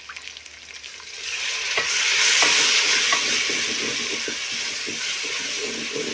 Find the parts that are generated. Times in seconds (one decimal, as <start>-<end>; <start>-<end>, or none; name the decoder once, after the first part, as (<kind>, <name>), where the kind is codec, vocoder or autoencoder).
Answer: none